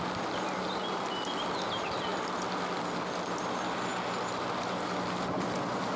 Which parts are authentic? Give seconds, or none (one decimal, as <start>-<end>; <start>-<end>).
0.0-6.0